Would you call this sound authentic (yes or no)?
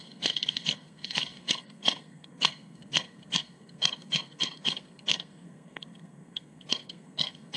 no